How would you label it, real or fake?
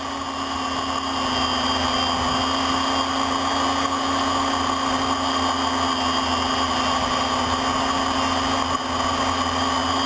real